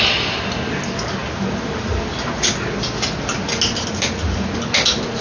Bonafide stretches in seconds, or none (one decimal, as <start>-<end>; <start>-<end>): 0.0-5.2